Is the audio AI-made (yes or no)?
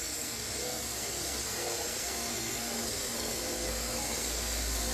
yes